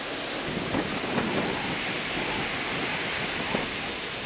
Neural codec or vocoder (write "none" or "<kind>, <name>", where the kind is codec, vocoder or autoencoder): none